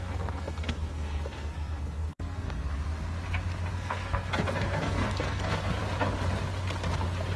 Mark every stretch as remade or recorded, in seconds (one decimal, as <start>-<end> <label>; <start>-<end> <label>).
0.0-2.7 remade; 2.7-3.7 recorded; 3.7-5.8 remade; 5.8-7.4 recorded